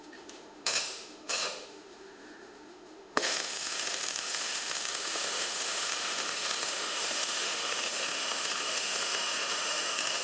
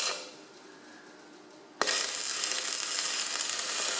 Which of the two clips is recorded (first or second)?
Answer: second